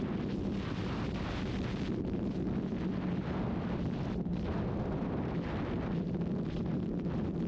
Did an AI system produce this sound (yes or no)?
no